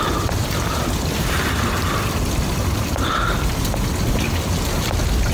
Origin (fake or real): real